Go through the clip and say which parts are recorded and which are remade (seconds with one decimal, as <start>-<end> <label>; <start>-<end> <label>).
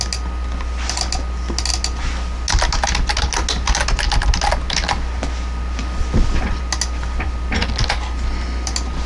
0.0-5.8 recorded; 5.8-6.6 remade; 6.6-9.1 recorded